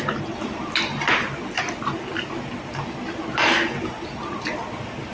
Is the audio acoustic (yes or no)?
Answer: yes